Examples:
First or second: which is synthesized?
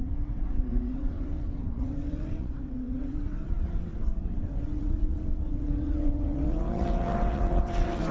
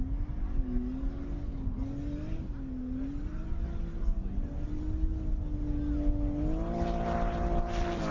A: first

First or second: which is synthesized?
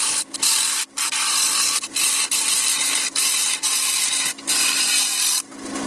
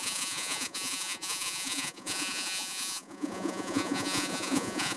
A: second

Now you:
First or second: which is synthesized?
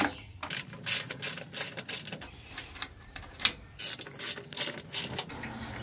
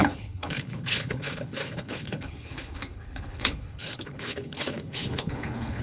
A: second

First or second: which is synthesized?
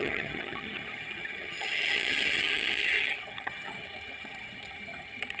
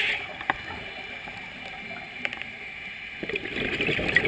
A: first